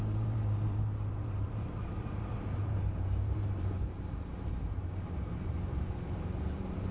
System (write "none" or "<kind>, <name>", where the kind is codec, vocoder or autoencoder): vocoder, BigVGAN v2